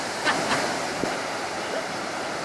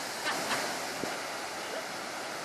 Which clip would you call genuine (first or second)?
second